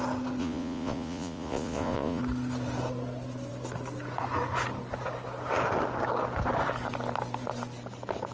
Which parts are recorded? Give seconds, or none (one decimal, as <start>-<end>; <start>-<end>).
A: 0.0-0.4; 2.2-8.3